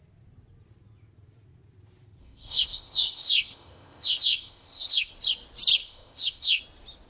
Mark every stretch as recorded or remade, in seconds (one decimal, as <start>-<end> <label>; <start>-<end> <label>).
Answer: 0.0-2.2 recorded; 2.2-5.1 remade; 5.1-5.8 recorded; 5.8-6.6 remade; 6.6-7.1 recorded